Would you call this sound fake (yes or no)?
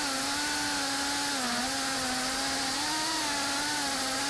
no